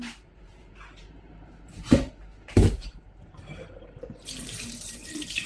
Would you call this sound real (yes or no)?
no